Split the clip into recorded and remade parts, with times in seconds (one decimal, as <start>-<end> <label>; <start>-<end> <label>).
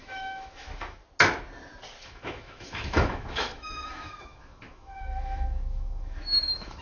0.0-1.0 remade; 1.0-2.0 recorded; 2.0-6.8 remade